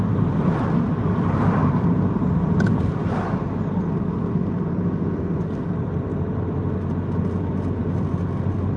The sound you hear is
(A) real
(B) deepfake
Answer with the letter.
A